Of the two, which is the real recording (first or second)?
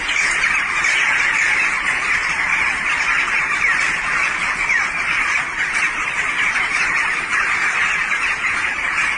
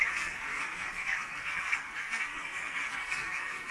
first